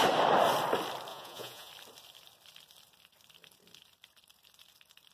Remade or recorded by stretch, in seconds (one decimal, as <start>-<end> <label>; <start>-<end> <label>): 0.0-1.1 recorded; 1.1-1.7 remade; 1.7-5.1 recorded